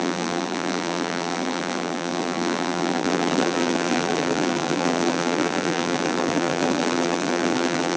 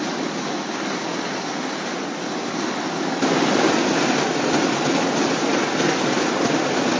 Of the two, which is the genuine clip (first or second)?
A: second